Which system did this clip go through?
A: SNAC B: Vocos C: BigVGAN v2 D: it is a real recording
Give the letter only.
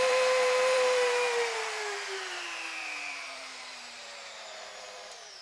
C